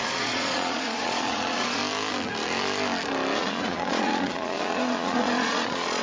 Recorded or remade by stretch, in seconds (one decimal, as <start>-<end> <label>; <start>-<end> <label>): 0.0-1.8 remade; 1.8-3.4 recorded; 3.4-6.0 remade